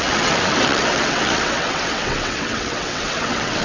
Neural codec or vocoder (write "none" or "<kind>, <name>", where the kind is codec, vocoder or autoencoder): vocoder, WaveNeXt